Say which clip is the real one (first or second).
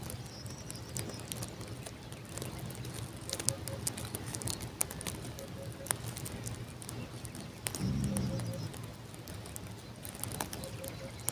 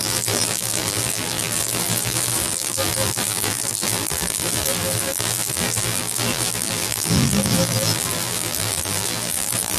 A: first